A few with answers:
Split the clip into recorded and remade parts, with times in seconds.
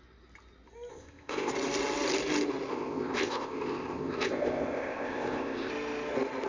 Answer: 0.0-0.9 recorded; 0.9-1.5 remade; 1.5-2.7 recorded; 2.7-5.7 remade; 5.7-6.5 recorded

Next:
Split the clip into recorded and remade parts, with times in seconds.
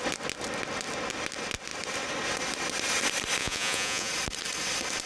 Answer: 0.0-3.4 recorded; 3.4-4.1 remade; 4.1-5.1 recorded